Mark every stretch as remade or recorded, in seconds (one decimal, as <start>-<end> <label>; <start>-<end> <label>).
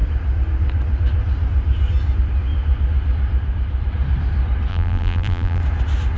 0.0-4.7 recorded; 4.7-5.6 remade; 5.6-6.2 recorded